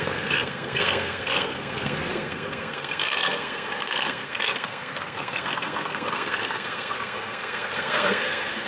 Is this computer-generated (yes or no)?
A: yes